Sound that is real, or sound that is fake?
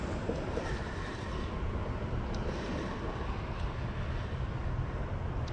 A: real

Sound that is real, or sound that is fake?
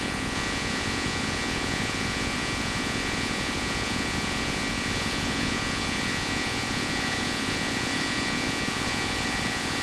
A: fake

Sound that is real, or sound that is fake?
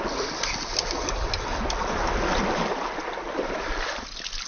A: real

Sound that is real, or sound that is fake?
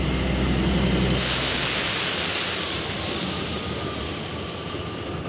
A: real